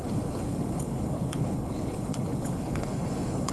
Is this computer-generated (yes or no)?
yes